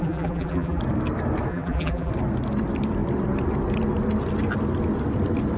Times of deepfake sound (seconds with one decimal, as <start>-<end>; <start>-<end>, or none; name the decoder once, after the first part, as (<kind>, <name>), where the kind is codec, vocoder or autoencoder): 0.0-0.8 (vocoder, BigVGAN v2); 1.5-2.1